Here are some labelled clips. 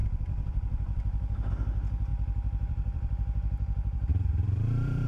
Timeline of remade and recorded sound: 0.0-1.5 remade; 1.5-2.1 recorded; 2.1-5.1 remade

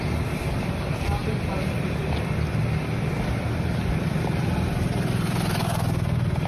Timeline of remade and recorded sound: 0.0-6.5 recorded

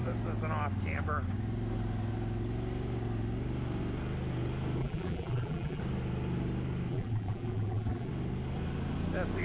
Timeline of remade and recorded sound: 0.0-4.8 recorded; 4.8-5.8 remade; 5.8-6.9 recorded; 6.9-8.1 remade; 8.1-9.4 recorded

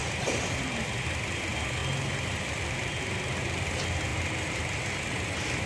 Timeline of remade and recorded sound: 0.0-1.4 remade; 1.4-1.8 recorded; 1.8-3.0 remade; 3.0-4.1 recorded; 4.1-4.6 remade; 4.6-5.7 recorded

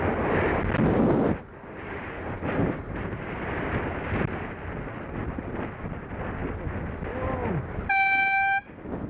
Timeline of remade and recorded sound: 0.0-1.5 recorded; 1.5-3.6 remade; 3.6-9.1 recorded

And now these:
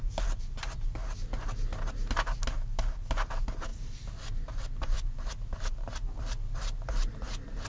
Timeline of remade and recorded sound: 0.0-3.7 recorded; 3.7-5.9 remade; 5.9-7.7 recorded

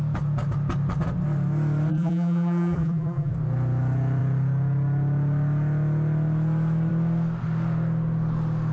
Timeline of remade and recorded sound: 0.0-1.9 recorded; 1.9-3.3 remade; 3.3-8.7 recorded

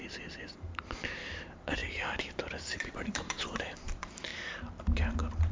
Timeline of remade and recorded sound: 0.0-4.3 remade; 4.3-4.8 recorded; 4.8-5.5 remade